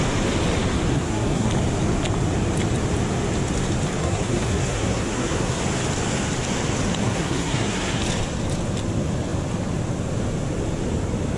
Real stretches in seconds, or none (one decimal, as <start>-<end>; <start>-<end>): 0.0-0.9; 1.5-4.0; 5.6-7.0; 8.0-11.4